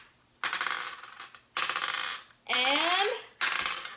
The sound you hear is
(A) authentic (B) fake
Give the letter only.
A